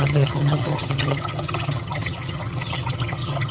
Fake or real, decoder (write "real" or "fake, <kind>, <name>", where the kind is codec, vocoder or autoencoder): fake, vocoder, HiFi-GAN